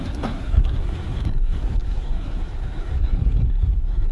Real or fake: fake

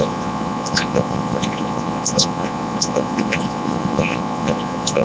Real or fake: fake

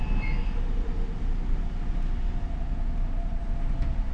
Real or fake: real